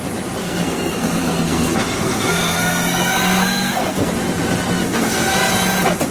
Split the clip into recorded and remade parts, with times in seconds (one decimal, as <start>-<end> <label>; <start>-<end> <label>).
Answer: 0.0-0.4 recorded; 0.4-4.1 remade; 4.1-4.8 recorded; 4.8-5.5 remade; 5.5-6.1 recorded